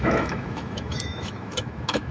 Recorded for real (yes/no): no